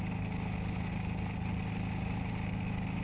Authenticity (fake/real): real